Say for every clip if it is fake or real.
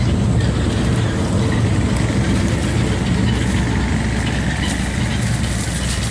real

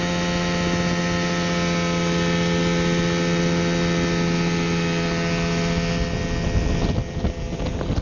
real